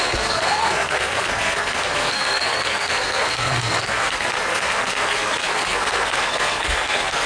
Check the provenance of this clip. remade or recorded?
remade